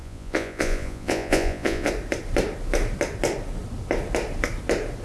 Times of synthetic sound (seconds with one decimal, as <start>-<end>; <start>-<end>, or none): 0.0-1.9